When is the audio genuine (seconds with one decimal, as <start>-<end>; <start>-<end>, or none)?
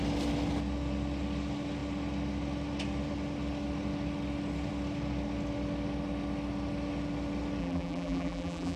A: 0.0-7.6